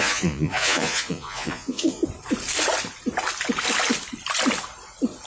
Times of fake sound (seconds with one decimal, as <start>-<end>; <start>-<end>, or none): 0.0-2.0